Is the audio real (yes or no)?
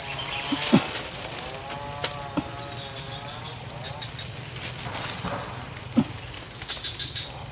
yes